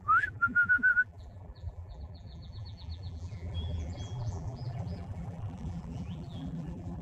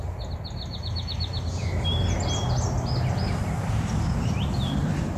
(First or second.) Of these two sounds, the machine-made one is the first